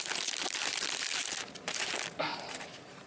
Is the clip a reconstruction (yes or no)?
no